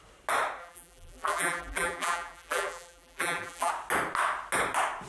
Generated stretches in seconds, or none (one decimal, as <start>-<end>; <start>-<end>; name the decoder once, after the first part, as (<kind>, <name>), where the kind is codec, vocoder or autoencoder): 0.6-3.7 (vocoder, BigVGAN v2)